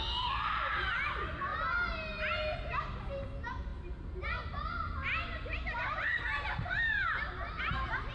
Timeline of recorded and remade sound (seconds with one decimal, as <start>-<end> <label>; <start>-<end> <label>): 0.0-1.5 remade; 1.5-2.1 recorded; 2.1-8.1 remade